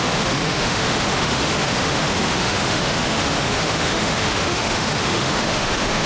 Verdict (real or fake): fake